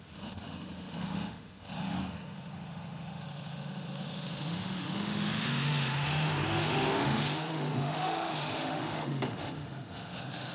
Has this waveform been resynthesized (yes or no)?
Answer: yes